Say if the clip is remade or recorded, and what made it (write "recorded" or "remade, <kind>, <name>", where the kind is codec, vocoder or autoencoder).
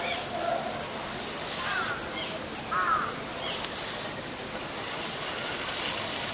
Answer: recorded